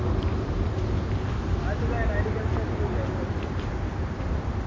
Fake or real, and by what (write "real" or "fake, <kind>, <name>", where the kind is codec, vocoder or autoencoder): real